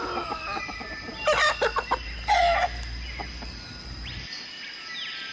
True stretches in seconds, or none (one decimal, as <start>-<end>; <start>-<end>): 0.0-5.3